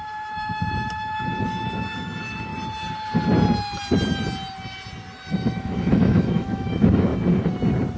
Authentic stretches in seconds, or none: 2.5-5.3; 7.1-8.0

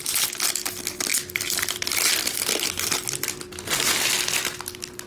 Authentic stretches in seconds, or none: 0.0-5.1